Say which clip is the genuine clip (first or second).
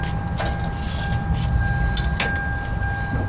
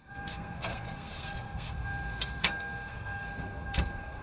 first